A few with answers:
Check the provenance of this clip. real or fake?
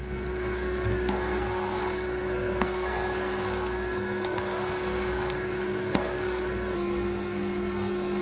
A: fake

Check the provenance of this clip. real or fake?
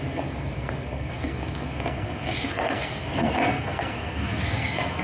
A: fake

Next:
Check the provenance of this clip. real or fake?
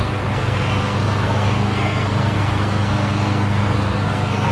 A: fake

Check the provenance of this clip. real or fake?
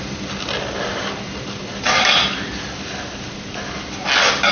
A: real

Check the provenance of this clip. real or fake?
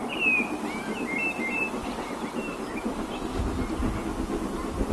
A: real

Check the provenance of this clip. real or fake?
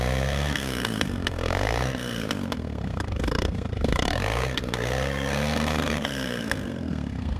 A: fake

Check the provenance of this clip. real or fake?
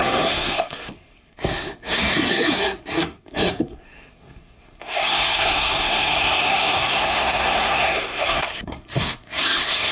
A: fake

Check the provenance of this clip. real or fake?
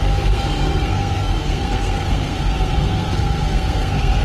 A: fake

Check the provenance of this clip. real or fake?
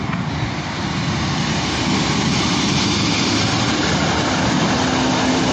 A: real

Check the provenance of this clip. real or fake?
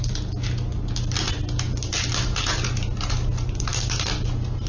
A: real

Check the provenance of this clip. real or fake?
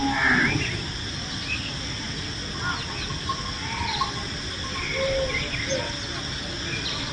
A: real